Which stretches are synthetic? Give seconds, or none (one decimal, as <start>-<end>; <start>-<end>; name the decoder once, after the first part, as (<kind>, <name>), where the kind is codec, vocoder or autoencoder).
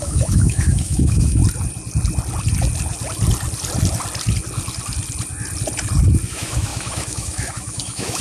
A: 0.0-1.4 (autoencoder, DAC-VAE); 6.3-8.2